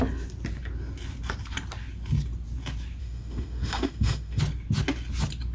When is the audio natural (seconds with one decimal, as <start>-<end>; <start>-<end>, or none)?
0.0-3.0; 4.4-5.5